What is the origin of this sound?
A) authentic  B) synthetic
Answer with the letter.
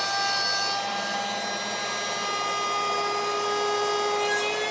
A